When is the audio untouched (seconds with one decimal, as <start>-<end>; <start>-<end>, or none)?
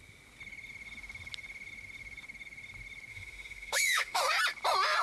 0.0-3.1; 4.2-5.0